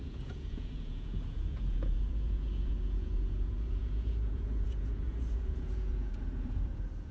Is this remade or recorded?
remade